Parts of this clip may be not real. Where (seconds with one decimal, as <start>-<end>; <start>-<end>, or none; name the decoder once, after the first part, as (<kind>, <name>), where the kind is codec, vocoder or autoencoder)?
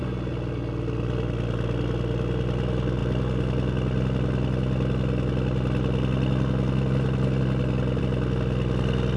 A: none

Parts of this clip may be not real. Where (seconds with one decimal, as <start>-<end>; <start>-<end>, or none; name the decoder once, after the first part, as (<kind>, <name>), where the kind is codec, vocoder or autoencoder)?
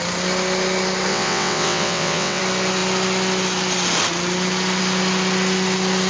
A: 1.1-2.4 (vocoder, WaveNeXt)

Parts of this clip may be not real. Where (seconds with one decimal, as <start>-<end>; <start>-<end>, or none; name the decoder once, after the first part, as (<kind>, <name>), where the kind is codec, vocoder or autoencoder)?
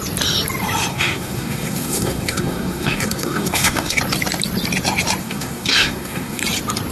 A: 0.9-4.0 (codec, SNAC); 5.2-6.4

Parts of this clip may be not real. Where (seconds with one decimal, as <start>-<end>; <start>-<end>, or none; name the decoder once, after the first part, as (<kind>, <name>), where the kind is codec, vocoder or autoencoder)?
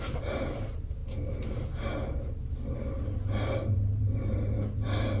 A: 0.0-1.0 (vocoder, BigVGAN v2); 3.7-5.2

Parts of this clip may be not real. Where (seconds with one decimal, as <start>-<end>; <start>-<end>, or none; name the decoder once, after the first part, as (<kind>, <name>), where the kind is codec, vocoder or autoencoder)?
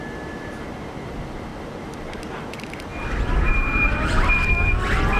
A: 0.0-2.9 (vocoder, BigVGAN v2); 3.5-5.2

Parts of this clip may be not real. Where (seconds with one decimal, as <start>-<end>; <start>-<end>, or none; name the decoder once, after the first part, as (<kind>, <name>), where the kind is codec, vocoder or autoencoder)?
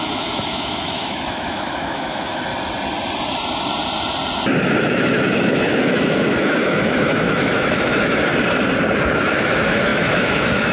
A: 0.0-2.5 (autoencoder, DAC-VAE); 4.7-8.3; 9.0-10.7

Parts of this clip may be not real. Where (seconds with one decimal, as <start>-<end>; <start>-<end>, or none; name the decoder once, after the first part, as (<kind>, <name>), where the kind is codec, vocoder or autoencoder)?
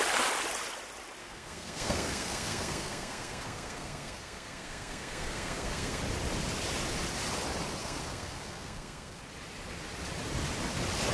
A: 1.2-6.0 (codec, SNAC); 7.8-9.2